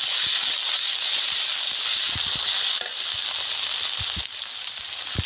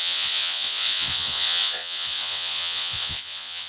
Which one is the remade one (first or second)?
second